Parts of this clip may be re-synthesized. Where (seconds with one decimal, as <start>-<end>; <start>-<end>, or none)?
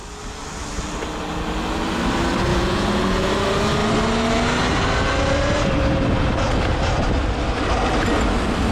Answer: 2.5-3.3